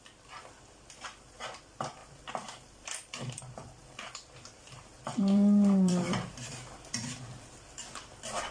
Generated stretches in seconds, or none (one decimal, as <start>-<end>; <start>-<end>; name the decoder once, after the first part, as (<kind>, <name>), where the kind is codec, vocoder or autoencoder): 2.0-3.4 (vocoder, BigVGAN v2); 3.8-6.3